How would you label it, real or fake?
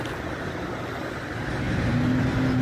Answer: real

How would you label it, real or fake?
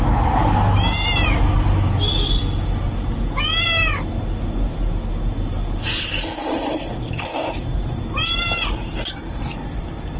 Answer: real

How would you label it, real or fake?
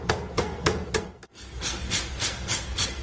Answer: fake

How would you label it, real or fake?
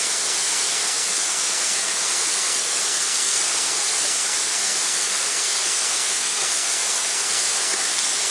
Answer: fake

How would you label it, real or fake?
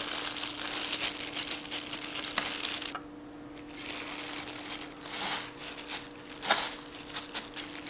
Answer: real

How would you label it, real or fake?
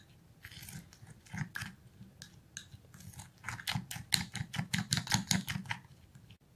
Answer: real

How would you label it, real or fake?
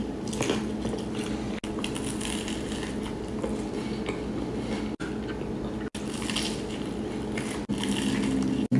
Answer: real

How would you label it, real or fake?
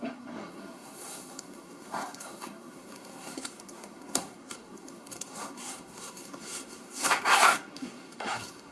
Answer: fake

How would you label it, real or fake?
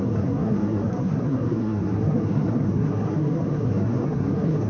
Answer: fake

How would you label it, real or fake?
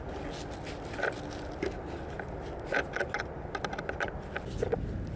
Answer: real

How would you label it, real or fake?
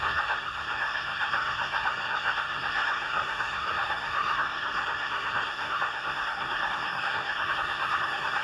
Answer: fake